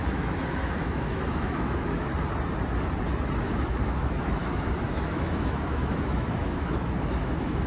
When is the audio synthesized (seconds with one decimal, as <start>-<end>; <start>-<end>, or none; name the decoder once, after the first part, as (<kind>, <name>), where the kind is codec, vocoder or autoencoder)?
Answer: 0.0-2.1 (autoencoder, DAC-VAE); 3.4-7.7

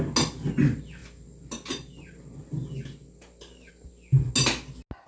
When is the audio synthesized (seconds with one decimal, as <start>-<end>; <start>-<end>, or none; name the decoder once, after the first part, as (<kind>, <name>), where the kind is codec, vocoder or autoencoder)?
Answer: none

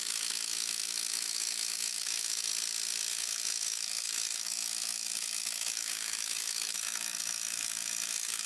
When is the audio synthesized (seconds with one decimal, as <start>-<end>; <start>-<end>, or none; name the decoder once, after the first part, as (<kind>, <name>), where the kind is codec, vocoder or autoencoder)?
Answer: 0.0-2.5 (autoencoder, DAC-VAE); 3.1-8.5

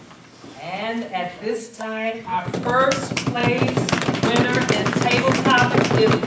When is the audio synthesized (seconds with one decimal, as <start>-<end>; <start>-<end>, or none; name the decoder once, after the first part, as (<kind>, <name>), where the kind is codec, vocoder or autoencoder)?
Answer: 1.6-2.4 (codec, SNAC)

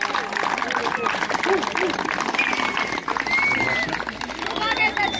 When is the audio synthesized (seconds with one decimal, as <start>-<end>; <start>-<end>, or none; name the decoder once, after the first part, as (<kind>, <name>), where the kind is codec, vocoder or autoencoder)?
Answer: none

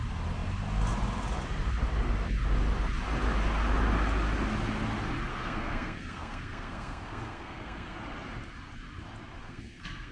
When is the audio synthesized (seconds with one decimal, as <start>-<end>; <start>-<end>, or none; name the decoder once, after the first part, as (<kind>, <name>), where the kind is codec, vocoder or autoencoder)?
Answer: 5.3-8.0 (codec, SNAC); 9.4-10.1

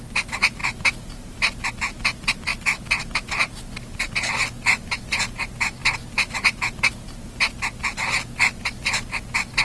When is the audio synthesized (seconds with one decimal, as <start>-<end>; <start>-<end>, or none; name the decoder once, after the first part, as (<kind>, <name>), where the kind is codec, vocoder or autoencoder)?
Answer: 0.6-1.7 (vocoder, BigVGAN v2)

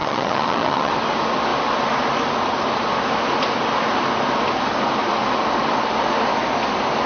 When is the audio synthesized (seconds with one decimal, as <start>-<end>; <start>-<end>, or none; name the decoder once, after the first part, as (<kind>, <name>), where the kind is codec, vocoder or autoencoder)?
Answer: 0.0-0.9 (vocoder, HiFi-GAN)